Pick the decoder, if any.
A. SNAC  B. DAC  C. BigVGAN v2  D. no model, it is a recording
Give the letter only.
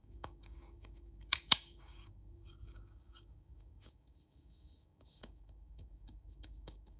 B